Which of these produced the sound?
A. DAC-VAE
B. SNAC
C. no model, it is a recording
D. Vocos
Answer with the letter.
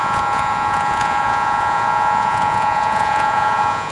D